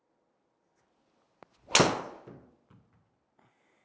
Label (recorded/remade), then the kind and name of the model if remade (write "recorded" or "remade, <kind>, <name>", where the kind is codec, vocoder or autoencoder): recorded